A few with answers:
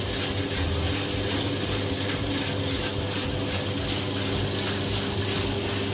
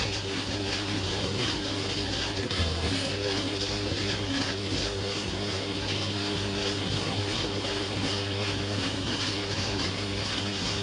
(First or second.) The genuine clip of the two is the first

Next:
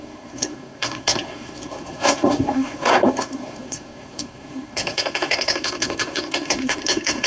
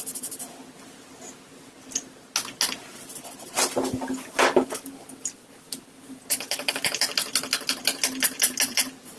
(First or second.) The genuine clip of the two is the second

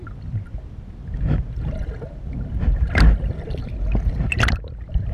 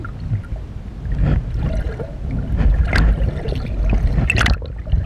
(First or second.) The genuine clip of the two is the second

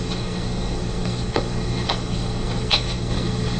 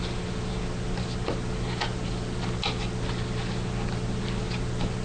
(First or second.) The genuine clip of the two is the second